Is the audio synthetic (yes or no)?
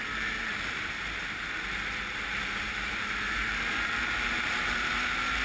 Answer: yes